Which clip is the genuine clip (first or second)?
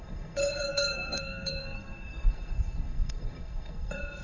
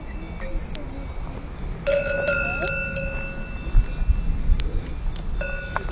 second